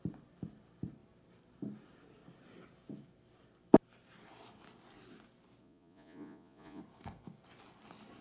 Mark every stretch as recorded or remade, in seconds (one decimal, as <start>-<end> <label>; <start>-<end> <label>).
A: 0.0-5.6 recorded; 5.6-6.8 remade; 6.8-8.2 recorded

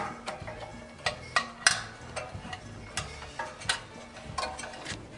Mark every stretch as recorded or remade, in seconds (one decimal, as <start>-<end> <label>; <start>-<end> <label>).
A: 0.0-5.2 recorded